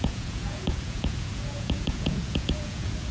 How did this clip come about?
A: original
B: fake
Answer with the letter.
B